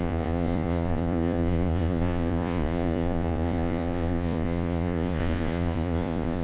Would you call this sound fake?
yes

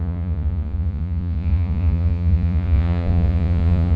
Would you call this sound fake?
yes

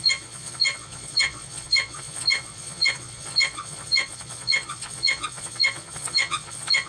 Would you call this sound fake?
yes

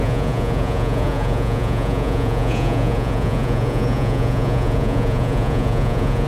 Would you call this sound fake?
yes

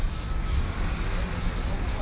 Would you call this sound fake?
no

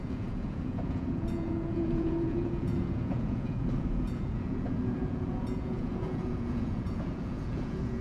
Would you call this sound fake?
yes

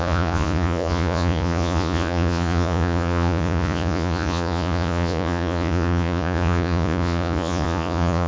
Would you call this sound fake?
yes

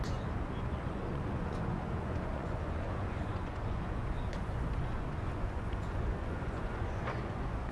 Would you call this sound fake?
yes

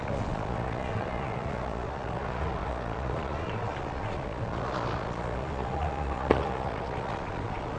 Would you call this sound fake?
yes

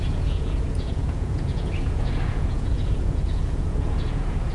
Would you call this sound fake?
yes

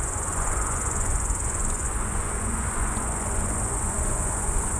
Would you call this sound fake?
yes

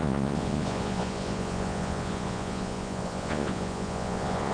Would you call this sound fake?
yes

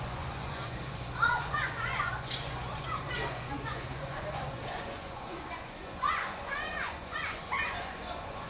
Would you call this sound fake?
yes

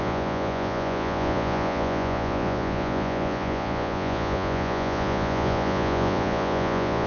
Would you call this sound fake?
yes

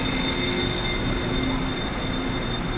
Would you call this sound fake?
no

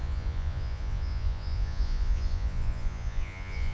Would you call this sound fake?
yes